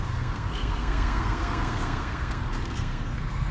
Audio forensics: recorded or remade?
remade